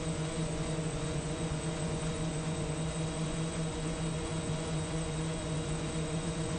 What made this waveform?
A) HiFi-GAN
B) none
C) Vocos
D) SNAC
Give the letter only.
C